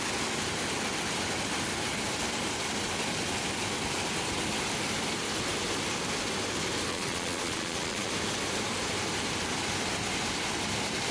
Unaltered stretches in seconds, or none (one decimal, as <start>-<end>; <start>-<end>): 0.0-6.9; 8.1-11.1